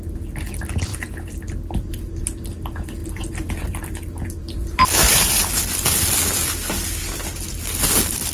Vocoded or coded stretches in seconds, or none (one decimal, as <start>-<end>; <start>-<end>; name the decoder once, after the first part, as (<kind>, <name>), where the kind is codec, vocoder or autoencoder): none